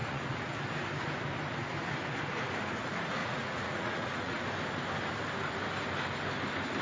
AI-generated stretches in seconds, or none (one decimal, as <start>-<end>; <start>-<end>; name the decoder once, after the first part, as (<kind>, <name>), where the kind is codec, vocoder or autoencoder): 0.0-0.6 (vocoder, Vocos); 3.2-4.4